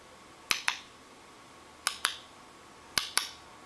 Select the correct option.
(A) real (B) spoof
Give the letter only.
A